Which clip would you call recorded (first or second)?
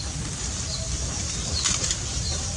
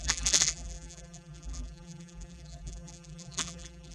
first